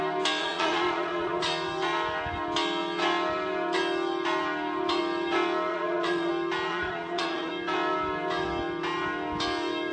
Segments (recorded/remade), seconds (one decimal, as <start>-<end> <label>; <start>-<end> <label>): 0.0-0.4 recorded; 0.4-1.4 remade; 1.4-5.7 recorded; 5.7-6.3 remade; 6.3-6.7 recorded; 6.7-7.5 remade; 7.5-9.9 recorded